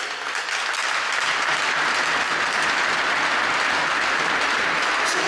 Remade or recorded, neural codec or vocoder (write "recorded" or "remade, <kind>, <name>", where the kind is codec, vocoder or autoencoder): recorded